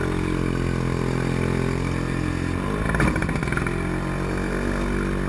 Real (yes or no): yes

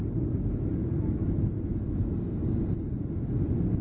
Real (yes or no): yes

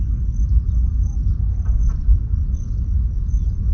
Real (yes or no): yes